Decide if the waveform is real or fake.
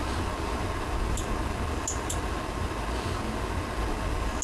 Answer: real